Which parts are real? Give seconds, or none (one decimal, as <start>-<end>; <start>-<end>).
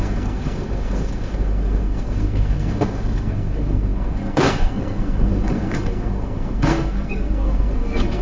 none